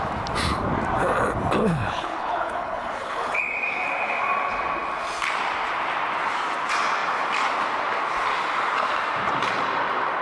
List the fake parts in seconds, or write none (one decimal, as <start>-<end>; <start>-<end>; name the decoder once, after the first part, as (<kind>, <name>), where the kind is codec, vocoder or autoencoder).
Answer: 1.6-3.4 (codec, HILCodec)